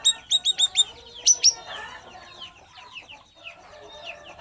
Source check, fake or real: real